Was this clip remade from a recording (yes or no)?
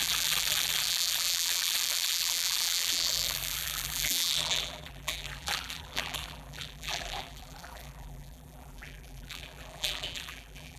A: yes